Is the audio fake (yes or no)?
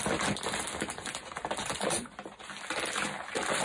no